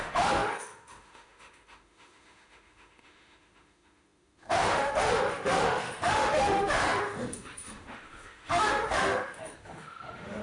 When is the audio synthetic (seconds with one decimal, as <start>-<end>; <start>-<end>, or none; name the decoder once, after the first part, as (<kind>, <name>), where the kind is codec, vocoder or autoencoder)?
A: 0.0-10.4 (autoencoder, DAC-VAE)